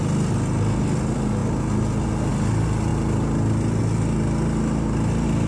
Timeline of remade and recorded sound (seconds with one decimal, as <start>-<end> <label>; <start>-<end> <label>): 0.0-5.5 recorded